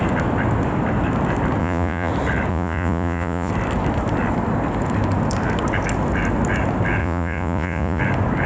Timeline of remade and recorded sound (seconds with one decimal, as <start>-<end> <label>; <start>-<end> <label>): 0.0-1.6 recorded; 1.6-2.1 remade; 2.1-2.5 recorded; 2.5-3.5 remade; 3.5-7.0 recorded; 7.0-8.0 remade; 8.0-8.5 recorded